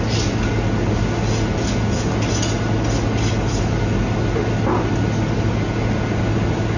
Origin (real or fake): real